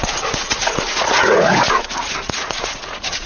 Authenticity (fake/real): fake